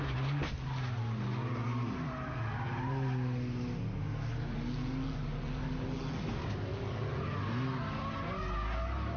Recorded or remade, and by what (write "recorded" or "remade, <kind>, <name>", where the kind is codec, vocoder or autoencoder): recorded